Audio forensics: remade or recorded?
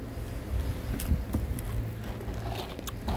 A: recorded